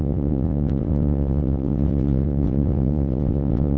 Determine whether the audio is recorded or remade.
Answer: remade